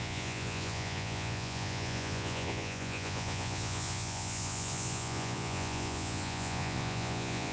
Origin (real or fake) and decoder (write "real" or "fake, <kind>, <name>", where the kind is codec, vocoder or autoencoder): fake, vocoder, Vocos